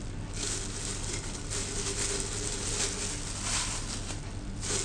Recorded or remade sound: recorded